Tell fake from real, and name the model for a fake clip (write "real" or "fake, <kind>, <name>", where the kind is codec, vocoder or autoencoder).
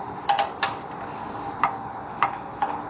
real